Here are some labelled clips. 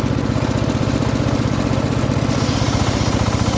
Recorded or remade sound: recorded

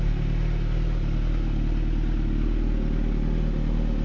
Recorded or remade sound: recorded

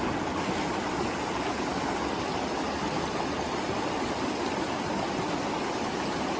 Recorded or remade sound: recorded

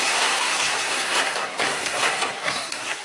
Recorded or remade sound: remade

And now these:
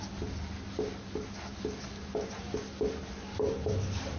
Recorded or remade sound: recorded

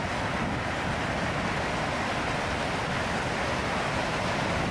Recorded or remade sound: recorded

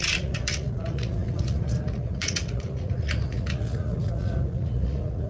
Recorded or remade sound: remade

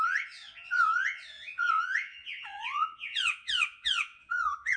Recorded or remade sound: remade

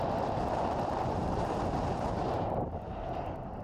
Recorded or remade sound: remade